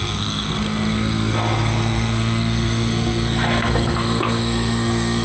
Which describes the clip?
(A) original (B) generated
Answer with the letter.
B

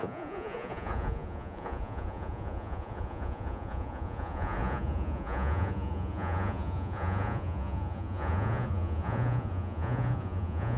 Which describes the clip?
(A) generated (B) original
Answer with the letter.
A